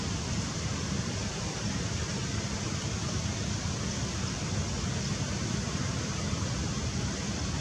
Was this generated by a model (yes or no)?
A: no